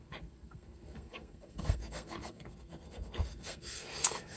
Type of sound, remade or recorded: remade